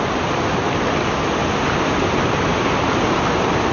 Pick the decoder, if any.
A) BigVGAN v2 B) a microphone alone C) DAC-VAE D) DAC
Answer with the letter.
B